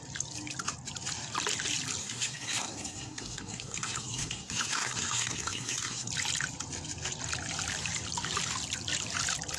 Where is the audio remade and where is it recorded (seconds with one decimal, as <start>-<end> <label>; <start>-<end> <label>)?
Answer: 0.0-2.0 recorded; 2.0-6.1 remade; 6.1-9.6 recorded